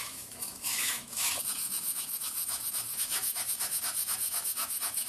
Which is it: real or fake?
fake